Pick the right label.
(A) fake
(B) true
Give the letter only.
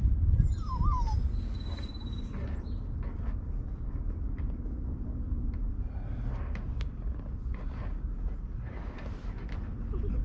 B